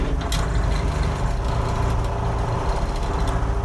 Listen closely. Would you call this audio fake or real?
real